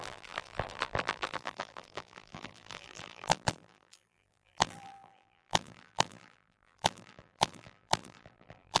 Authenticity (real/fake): fake